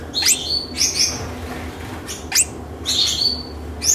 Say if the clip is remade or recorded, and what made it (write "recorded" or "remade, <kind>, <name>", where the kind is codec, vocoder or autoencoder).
recorded